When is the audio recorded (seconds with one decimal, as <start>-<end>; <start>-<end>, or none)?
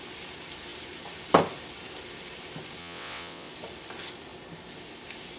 0.0-2.8; 3.5-5.4